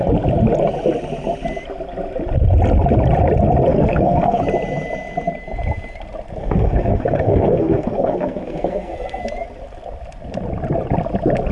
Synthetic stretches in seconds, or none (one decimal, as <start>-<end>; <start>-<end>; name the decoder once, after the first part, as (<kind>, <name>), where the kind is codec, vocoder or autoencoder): 3.7-4.4 (codec, SNAC); 6.4-9.2